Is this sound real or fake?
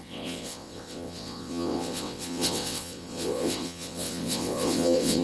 fake